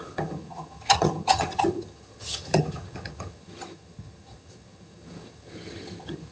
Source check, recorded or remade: remade